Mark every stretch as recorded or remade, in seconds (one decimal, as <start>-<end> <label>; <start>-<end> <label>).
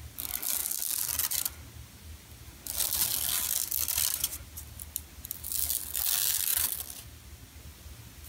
0.0-8.3 recorded